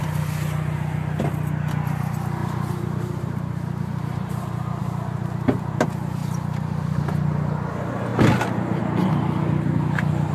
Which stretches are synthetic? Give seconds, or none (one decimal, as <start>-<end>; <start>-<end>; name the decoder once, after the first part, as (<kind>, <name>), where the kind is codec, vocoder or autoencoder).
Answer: 2.4-4.3 (vocoder, BigVGAN v2); 6.2-7.0